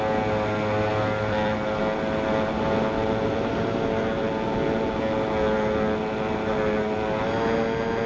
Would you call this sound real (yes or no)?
yes